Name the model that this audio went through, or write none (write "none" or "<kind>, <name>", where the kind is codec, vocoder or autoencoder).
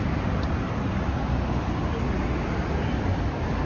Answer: none